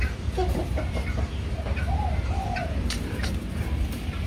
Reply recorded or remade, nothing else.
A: remade